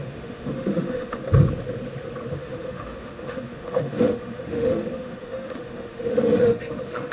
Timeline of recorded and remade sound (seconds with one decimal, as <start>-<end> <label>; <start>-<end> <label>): 0.0-1.2 remade; 1.2-2.3 recorded; 2.3-7.1 remade